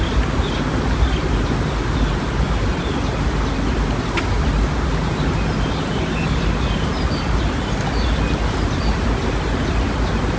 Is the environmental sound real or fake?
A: real